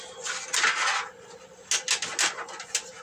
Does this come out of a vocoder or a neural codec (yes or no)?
no